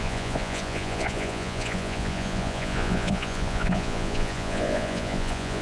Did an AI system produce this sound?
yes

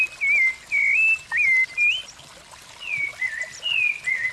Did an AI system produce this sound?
no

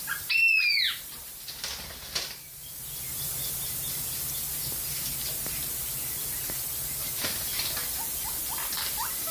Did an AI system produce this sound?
no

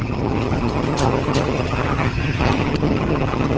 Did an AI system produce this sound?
yes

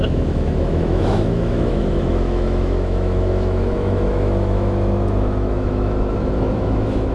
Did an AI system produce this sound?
yes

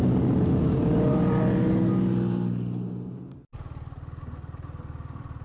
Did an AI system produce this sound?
no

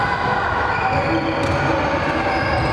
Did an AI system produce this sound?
no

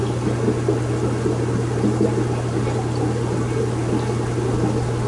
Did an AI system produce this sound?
no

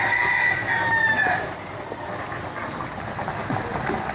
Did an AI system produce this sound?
no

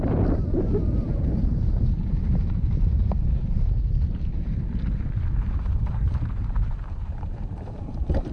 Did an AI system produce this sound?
yes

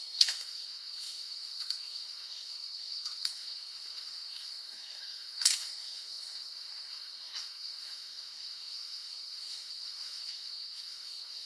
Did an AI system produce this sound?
yes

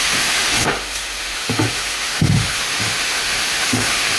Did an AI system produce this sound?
yes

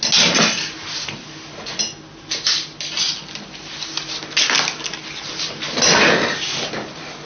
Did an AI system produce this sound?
no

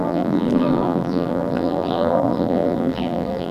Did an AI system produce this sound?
yes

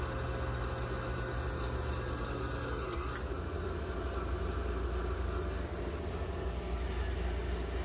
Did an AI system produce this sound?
no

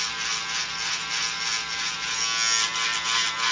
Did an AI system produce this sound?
no